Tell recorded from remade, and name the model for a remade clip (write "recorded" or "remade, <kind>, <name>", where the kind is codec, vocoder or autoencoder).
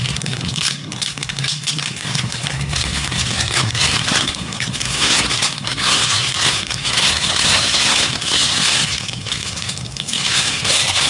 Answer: remade, codec, SNAC